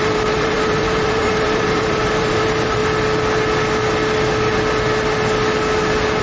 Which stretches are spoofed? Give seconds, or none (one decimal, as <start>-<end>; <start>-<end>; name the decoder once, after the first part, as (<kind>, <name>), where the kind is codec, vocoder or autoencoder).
0.0-2.8 (vocoder, BigVGAN v2)

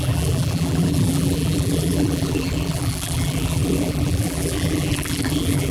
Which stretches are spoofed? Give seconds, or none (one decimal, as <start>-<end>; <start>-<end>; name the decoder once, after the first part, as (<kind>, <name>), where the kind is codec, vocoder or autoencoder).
0.0-5.7 (vocoder, BigVGAN v2)